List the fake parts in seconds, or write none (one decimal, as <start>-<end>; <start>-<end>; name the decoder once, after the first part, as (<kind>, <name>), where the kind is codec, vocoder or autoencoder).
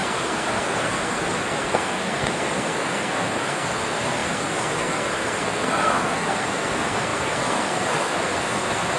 0.0-9.0 (codec, SNAC)